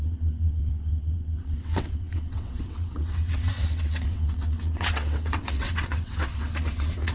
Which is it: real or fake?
fake